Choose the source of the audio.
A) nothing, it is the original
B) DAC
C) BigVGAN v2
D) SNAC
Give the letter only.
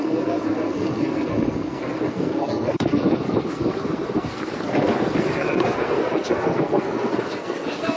D